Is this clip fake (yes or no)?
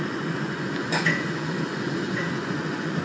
yes